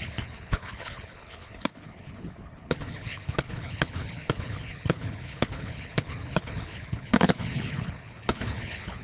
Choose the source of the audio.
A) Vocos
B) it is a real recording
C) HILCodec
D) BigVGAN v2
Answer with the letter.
C